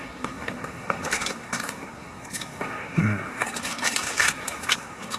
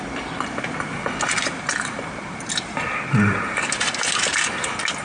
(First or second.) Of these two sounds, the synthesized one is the first